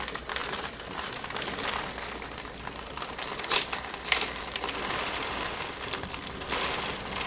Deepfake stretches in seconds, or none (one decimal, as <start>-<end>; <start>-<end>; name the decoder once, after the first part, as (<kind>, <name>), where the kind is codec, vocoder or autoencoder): 0.4-1.1 (vocoder, BigVGAN v2)